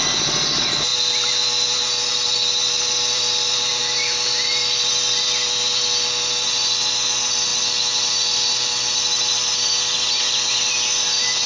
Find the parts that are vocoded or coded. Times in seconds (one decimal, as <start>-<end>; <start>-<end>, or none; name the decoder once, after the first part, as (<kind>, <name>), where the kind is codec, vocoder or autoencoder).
none

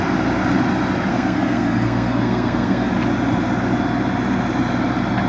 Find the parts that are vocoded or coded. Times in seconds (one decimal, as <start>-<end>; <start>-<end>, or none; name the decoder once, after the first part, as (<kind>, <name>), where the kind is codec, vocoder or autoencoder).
1.1-2.9 (codec, SNAC)

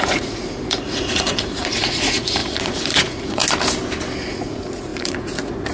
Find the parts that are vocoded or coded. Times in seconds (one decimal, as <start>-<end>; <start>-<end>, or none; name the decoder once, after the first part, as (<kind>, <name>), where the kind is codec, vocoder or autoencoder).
0.0-3.4 (vocoder, Vocos); 4.3-5.7

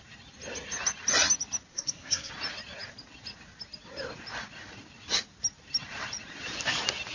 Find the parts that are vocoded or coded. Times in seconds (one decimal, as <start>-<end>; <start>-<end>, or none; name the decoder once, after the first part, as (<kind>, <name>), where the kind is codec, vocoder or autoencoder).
1.7-2.3 (codec, SNAC)

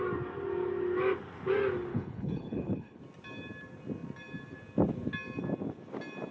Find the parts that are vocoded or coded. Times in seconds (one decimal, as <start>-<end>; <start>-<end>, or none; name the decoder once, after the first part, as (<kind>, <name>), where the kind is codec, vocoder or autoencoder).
1.9-3.0 (codec, HILCodec)